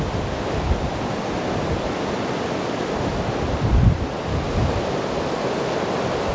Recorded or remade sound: recorded